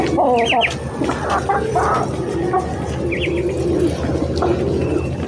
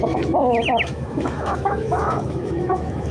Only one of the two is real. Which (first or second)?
first